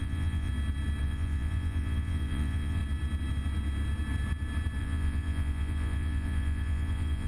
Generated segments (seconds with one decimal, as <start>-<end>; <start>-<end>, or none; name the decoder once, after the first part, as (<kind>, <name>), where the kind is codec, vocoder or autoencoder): 0.0-0.5 (vocoder, Vocos); 1.0-2.8; 4.8-7.3